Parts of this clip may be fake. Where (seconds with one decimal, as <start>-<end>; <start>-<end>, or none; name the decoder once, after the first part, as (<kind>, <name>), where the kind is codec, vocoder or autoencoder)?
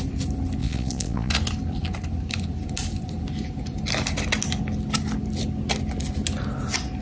0.6-1.3 (vocoder, Vocos)